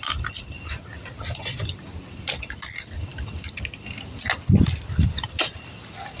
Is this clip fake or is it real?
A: real